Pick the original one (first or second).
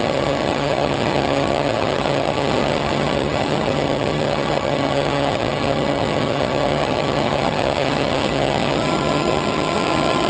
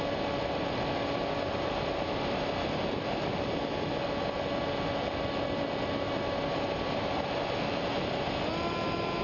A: second